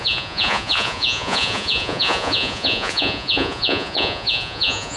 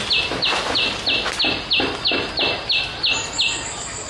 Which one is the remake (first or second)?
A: first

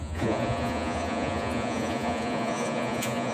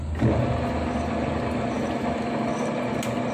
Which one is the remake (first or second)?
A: first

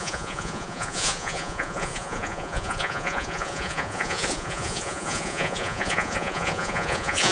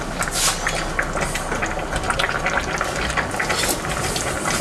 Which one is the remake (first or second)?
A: first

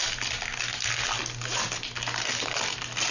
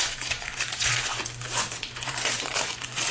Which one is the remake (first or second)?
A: second